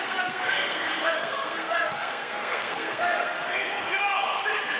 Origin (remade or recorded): remade